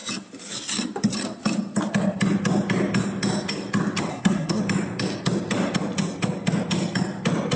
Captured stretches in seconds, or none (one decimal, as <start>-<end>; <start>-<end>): 0.0-4.1; 4.6-7.6